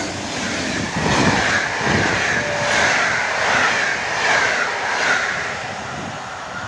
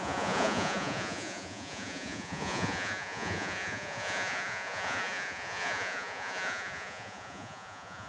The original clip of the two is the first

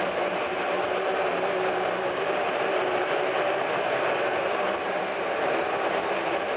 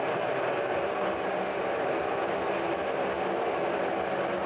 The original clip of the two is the second